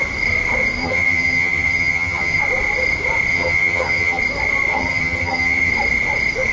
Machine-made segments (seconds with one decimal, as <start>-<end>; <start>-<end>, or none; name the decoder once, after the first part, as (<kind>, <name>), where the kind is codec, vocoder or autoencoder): 0.8-2.4 (vocoder, HiFi-GAN); 3.3-4.2; 4.7-5.7